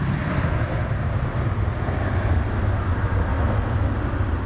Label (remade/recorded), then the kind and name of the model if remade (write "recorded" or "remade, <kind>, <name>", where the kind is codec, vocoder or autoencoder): recorded